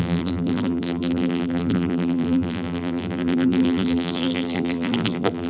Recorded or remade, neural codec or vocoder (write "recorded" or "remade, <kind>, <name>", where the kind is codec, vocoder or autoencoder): remade, vocoder, BigVGAN v2